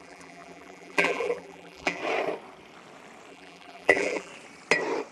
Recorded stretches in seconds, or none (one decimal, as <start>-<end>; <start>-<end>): 2.0-3.3; 4.3-5.1